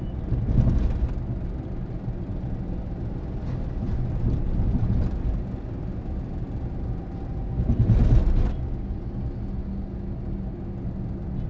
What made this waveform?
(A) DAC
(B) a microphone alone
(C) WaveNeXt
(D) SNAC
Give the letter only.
B